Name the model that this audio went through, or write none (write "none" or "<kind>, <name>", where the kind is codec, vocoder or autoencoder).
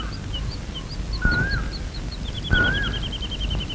none